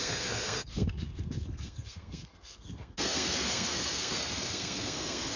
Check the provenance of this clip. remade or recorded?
remade